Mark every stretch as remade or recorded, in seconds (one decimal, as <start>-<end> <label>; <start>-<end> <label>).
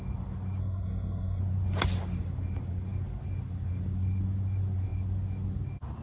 0.0-0.6 recorded; 0.6-1.4 remade; 1.4-6.0 recorded